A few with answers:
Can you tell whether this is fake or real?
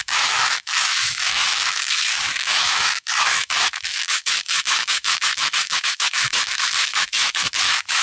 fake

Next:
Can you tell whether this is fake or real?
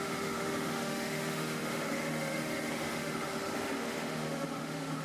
fake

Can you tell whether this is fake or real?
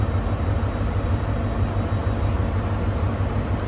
real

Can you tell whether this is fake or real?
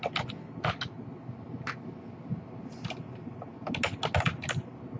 real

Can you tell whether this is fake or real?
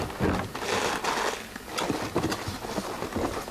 real